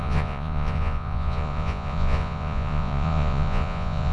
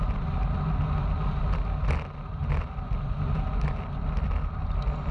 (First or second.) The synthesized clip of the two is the first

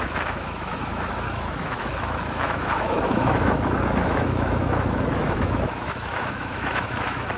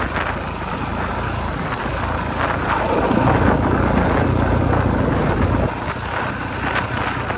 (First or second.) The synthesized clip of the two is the first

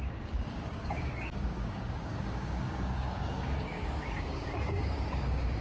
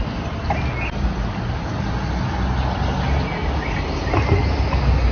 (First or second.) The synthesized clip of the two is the first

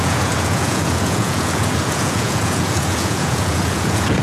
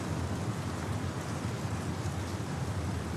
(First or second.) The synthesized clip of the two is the first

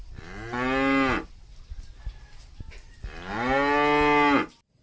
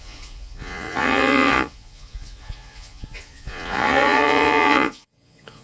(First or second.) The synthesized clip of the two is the second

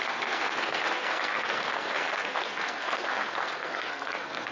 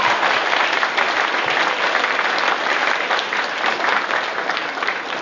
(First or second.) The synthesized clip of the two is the first